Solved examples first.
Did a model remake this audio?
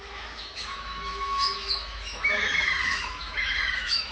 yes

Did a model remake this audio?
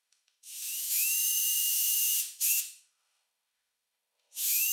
yes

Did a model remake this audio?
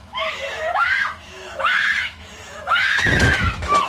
yes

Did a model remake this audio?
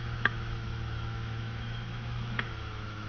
yes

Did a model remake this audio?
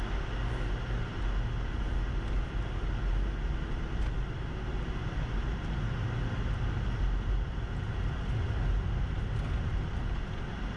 no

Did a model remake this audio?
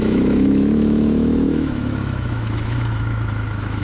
yes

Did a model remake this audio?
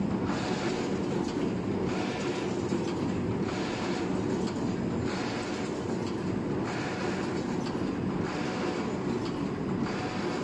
no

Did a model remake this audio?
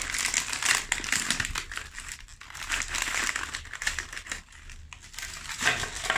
no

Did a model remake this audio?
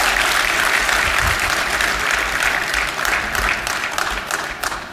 no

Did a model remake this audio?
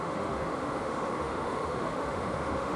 yes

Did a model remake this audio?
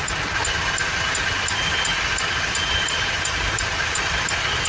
no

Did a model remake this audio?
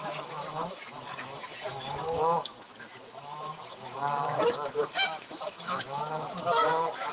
yes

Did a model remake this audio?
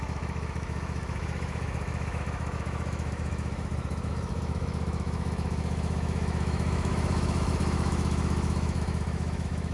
yes